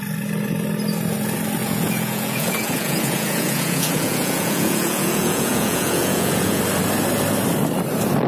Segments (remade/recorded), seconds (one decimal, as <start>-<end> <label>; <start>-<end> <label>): 0.0-1.6 recorded; 1.6-6.6 remade; 6.6-8.3 recorded